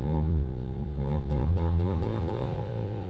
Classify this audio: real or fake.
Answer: fake